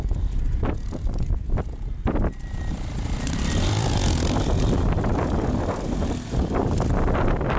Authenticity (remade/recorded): remade